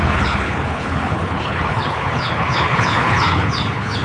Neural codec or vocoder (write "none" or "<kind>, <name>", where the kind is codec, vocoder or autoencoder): codec, HILCodec